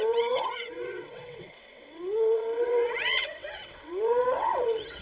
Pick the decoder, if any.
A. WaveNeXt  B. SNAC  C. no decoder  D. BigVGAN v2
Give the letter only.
A